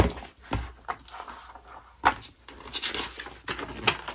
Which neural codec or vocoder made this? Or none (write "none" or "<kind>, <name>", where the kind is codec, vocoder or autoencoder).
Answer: none